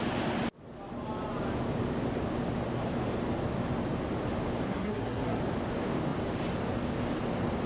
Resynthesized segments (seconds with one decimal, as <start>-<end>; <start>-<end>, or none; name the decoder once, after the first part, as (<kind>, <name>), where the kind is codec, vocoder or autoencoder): 4.7-5.4 (codec, SNAC)